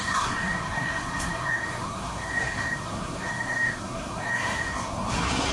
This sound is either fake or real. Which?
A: fake